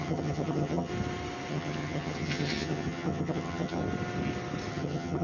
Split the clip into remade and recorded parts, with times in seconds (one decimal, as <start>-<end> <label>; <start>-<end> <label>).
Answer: 0.0-0.9 remade; 0.9-1.5 recorded; 1.5-3.8 remade; 3.8-4.7 recorded; 4.7-5.2 remade